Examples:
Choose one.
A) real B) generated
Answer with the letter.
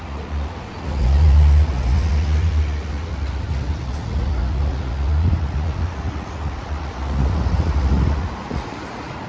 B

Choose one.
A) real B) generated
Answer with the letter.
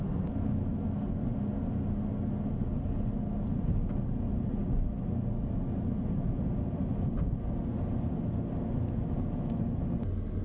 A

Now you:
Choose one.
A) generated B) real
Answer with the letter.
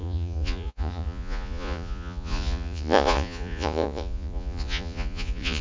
A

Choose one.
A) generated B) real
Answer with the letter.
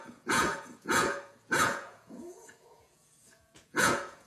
A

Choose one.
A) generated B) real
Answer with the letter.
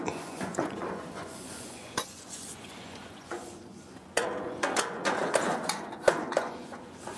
A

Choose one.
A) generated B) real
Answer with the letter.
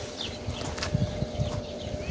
B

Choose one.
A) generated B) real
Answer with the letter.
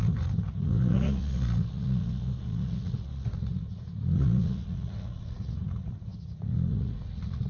A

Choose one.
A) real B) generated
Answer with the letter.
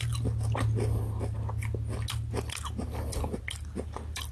A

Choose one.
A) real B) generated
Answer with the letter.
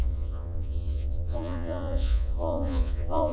B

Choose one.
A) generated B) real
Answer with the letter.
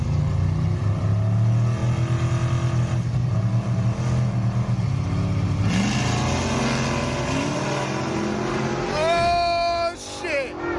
B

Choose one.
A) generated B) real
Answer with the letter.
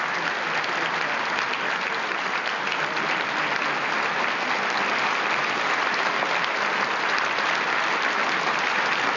B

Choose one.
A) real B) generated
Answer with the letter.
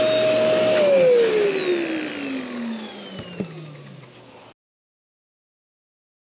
A